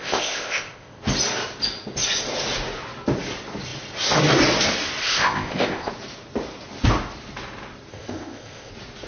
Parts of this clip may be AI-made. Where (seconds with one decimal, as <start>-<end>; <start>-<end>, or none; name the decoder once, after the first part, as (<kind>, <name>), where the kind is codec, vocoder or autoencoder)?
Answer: 0.0-1.0 (codec, ZipCodec); 5.0-5.9; 7.9-8.7